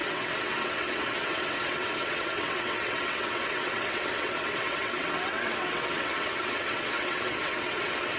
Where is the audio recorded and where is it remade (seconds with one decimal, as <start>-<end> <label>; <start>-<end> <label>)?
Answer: 0.0-8.2 remade